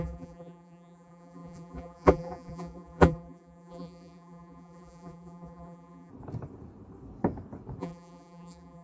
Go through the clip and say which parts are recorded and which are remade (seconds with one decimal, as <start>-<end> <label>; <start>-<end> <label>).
0.0-6.1 remade; 6.1-7.8 recorded; 7.8-8.8 remade